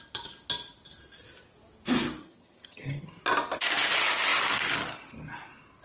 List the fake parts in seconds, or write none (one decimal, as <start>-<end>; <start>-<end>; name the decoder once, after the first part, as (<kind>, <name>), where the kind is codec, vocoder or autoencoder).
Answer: 2.2-3.2 (vocoder, HiFi-GAN)